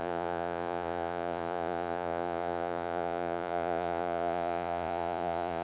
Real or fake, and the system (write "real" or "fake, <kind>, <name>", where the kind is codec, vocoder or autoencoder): fake, vocoder, Vocos